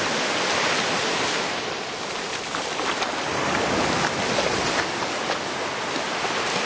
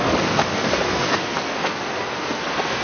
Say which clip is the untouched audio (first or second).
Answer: first